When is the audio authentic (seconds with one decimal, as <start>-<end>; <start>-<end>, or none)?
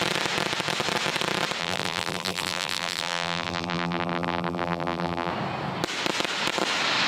0.0-1.6; 5.3-7.1